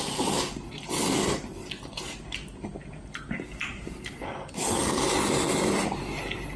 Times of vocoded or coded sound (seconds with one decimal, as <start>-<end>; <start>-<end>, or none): none